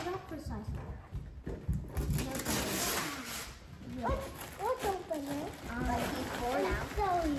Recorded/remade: recorded